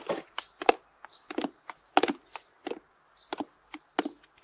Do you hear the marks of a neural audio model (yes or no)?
no